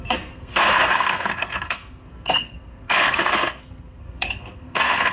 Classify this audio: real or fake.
fake